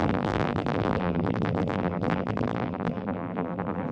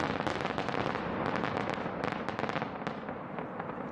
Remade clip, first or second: first